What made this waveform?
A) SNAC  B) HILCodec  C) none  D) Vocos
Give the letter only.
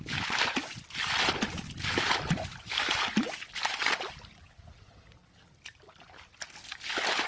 C